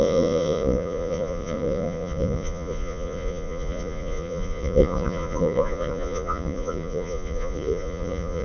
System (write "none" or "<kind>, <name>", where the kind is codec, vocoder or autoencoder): vocoder, Vocos